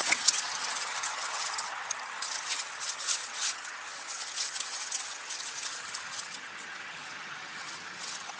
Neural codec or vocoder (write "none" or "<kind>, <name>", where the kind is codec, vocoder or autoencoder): vocoder, HiFi-GAN